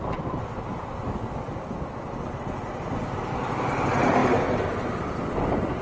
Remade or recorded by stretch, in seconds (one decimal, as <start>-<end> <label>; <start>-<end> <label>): 0.0-5.8 recorded